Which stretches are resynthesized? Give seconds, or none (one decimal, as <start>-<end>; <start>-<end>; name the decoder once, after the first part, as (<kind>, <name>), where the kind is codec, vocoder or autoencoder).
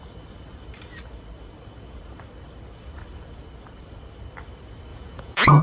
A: 4.9-5.6 (vocoder, Vocos)